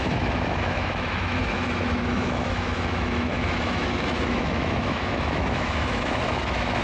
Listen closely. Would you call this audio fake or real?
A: fake